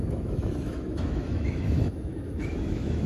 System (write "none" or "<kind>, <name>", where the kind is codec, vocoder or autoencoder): autoencoder, DAC-VAE